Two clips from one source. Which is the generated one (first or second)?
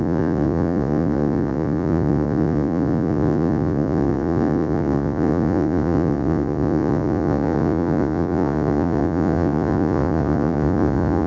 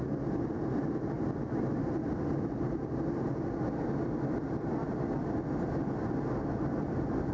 first